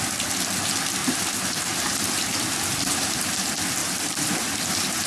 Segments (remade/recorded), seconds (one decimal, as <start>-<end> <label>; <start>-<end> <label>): 0.0-1.0 recorded; 1.0-3.4 remade; 3.4-3.8 recorded; 3.8-5.1 remade